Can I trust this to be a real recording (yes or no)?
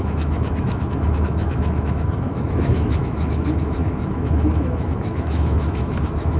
no